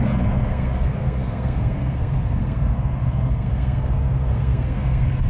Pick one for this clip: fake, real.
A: fake